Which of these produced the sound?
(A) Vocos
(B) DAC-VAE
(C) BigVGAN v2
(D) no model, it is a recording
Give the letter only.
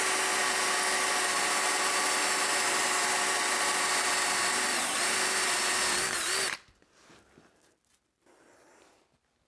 D